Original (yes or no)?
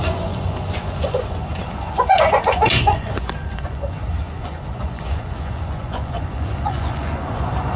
no